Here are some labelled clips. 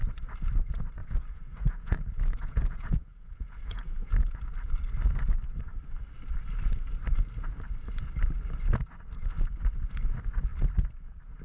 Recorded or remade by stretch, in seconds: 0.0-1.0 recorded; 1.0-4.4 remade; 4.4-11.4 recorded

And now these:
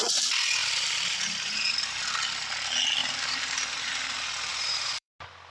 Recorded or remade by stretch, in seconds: 0.0-0.6 recorded; 0.6-1.7 remade; 1.7-3.0 recorded; 3.0-4.0 remade; 4.0-4.5 recorded; 4.5-5.1 remade; 5.1-5.5 recorded